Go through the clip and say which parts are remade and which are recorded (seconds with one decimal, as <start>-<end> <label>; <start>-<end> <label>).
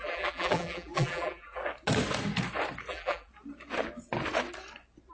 0.0-1.6 remade; 1.6-2.9 recorded; 2.9-3.3 remade; 3.3-5.1 recorded